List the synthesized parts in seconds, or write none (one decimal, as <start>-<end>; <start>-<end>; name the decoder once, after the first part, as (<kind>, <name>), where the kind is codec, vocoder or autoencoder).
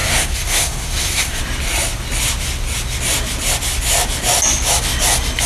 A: 0.0-1.4 (codec, SNAC)